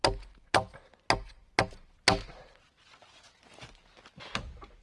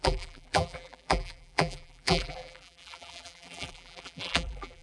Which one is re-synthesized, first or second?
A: second